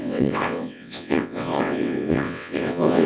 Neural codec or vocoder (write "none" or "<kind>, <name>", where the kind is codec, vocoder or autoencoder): vocoder, WaveNeXt